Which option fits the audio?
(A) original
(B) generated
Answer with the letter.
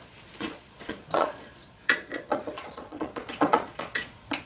B